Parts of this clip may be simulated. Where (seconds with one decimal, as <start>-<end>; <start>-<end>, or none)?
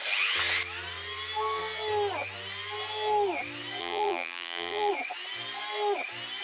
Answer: 3.8-4.9